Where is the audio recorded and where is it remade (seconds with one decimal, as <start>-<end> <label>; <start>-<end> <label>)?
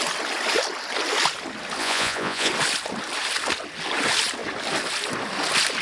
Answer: 0.0-1.8 recorded; 1.8-2.5 remade; 2.5-5.8 recorded